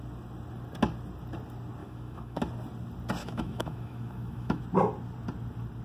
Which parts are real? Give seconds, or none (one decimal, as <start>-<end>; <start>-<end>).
0.0-1.8; 2.4-3.2; 4.6-5.8